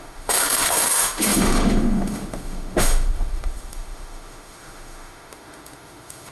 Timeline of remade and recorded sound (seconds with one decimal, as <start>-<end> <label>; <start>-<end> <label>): 0.0-6.3 remade